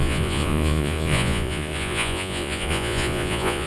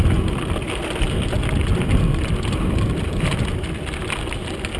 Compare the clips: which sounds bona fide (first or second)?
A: second